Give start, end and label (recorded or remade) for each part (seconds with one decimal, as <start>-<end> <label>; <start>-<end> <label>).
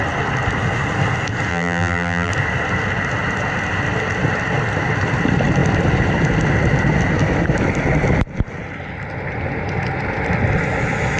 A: 0.0-1.5 recorded; 1.5-2.3 remade; 2.3-11.2 recorded